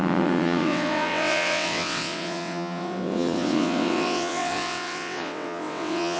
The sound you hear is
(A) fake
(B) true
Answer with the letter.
A